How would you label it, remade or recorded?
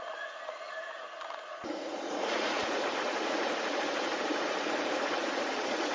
remade